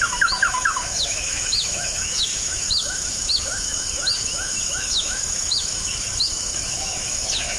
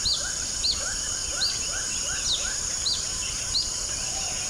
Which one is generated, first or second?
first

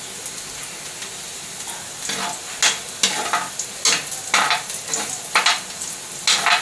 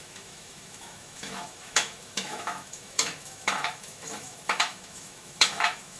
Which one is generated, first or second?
second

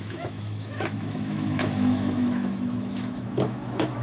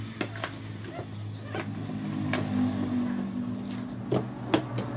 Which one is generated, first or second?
first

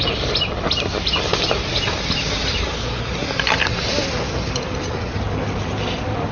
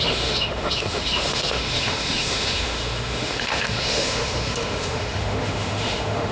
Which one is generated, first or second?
second